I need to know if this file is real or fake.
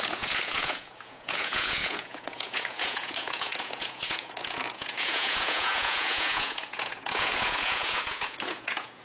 fake